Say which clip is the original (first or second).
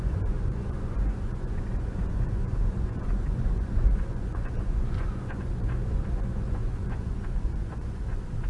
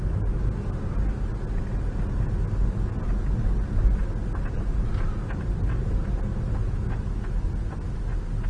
second